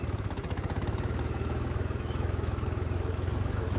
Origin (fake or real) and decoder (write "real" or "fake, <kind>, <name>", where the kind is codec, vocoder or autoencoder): fake, autoencoder, DAC-VAE